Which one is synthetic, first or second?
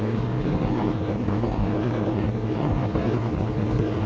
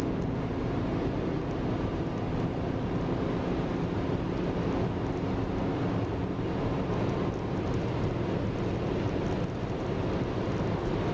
first